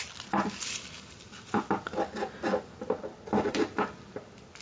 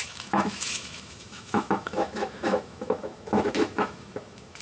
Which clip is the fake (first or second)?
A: second